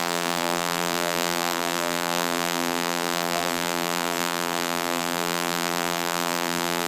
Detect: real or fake fake